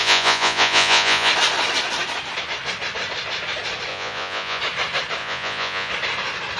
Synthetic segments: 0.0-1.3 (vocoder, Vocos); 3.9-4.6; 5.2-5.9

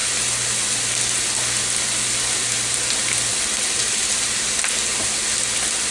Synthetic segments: 3.3-3.8 (vocoder, BigVGAN v2)

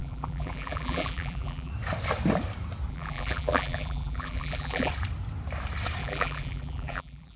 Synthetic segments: 0.0-1.7 (vocoder, BigVGAN v2); 2.9-4.9; 6.0-7.4

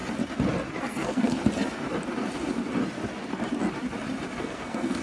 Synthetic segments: 0.8-1.4 (codec, SNAC); 4.4-5.0

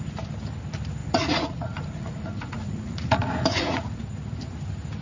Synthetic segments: 1.0-4.0 (vocoder, Vocos)